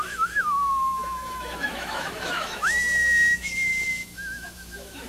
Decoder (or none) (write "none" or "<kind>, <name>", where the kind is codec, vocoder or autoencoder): autoencoder, DAC-VAE